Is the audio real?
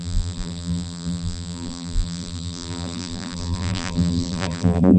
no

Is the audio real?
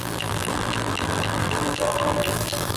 no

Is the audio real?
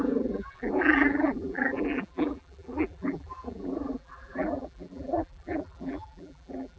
no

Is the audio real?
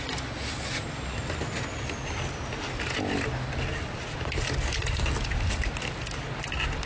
yes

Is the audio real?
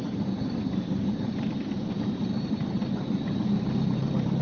no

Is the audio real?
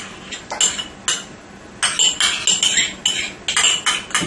yes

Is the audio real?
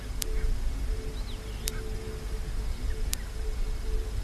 yes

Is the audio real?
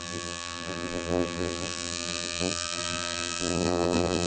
no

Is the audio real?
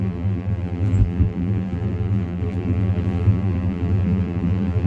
no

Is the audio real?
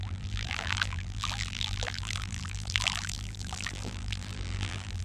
no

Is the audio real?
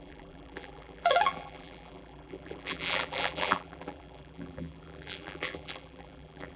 no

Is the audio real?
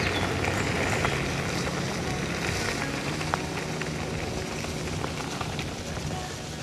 yes